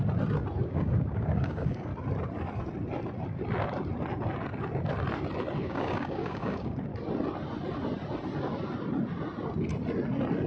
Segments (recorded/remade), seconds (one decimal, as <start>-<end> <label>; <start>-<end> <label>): 0.0-0.6 recorded; 0.6-1.9 remade; 1.9-5.6 recorded; 5.6-6.9 remade; 6.9-10.5 recorded